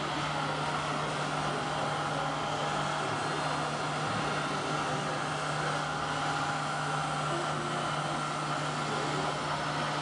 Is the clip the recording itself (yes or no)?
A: yes